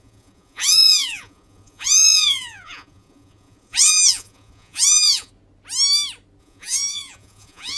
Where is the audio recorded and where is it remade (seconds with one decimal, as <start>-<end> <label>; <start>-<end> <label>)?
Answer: 0.0-5.3 remade; 5.3-6.4 recorded; 6.4-7.8 remade